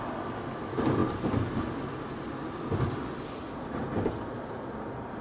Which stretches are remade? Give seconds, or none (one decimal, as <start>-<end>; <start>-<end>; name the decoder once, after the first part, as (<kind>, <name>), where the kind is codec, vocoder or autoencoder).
none